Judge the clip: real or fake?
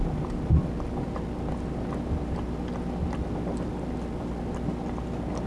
real